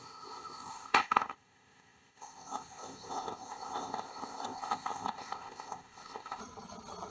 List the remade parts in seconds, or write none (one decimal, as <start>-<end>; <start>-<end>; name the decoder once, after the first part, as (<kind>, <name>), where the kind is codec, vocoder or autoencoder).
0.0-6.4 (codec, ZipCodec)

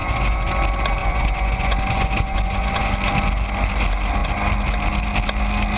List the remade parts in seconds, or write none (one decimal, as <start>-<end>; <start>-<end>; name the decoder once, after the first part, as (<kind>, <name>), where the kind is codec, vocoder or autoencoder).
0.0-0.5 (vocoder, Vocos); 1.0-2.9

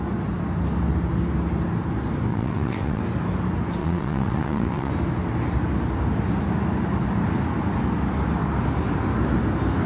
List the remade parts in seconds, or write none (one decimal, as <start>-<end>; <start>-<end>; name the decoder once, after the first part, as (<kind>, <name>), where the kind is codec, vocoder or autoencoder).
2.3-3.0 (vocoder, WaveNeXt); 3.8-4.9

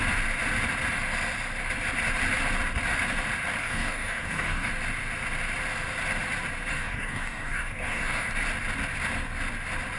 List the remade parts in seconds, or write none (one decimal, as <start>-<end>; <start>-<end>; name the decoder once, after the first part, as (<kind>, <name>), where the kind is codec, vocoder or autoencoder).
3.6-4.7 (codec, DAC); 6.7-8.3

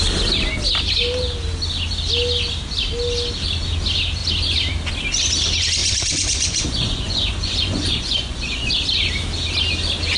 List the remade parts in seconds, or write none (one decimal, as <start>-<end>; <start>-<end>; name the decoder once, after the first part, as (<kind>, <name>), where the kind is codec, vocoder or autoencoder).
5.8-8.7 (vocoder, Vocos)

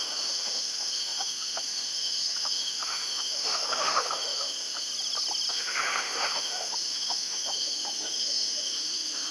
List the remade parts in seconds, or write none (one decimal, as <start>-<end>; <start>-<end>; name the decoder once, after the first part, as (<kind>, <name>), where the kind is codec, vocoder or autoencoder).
0.0-4.9 (autoencoder, DAC-VAE); 5.5-9.3

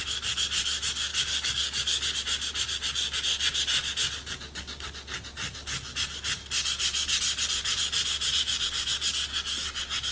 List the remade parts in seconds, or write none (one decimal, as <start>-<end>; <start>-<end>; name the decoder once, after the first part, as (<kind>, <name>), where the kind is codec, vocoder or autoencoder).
1.1-2.2 (codec, DAC)